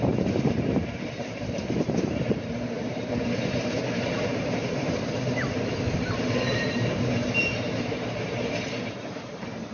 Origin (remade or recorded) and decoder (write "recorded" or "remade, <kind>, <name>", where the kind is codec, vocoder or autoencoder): remade, vocoder, BigVGAN v2